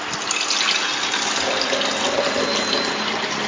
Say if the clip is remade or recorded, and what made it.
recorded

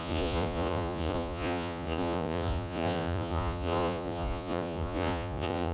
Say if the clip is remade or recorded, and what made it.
remade, vocoder, Vocos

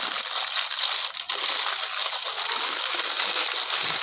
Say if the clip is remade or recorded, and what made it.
recorded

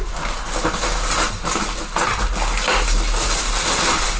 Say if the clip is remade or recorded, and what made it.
recorded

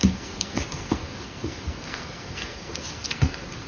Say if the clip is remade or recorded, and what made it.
remade, codec, SNAC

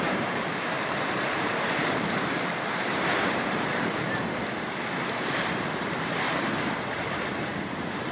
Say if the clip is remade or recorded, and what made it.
remade, vocoder, BigVGAN v2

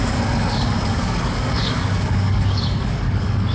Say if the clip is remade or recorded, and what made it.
remade, codec, DAC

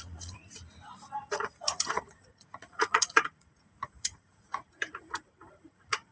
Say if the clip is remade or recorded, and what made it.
remade, vocoder, Vocos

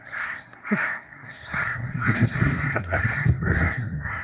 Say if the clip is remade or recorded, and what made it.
remade, codec, SNAC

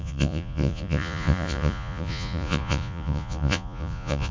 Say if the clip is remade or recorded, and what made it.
remade, vocoder, Vocos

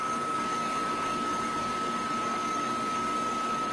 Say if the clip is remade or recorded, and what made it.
remade, codec, DAC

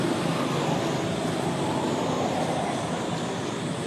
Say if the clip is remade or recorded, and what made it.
recorded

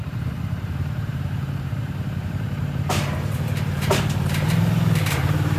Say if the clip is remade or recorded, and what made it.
remade, vocoder, BigVGAN v2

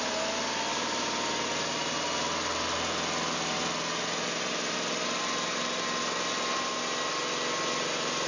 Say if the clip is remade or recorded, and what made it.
recorded